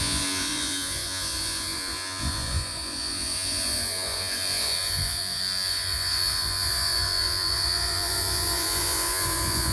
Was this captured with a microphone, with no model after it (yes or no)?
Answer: no